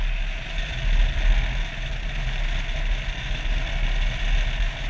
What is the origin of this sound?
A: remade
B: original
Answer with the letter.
B